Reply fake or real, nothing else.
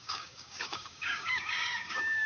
fake